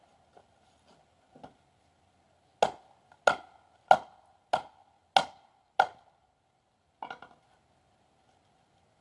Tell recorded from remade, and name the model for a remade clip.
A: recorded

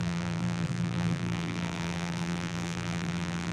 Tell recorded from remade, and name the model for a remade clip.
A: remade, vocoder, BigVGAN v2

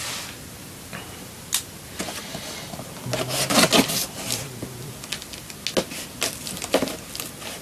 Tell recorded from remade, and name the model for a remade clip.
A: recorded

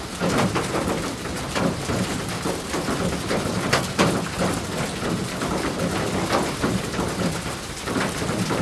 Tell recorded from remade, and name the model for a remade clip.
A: recorded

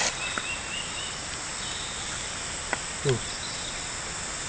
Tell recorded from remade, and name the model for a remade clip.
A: recorded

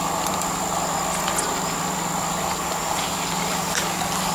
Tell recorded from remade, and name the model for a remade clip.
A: recorded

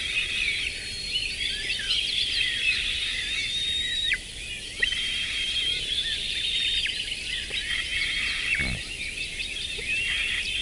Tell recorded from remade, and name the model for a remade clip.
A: remade, vocoder, BigVGAN v2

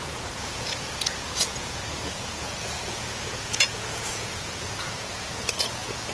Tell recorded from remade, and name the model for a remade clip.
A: remade, vocoder, Vocos